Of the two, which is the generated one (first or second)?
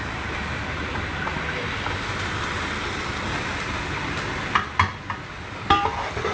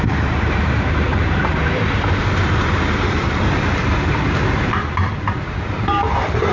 second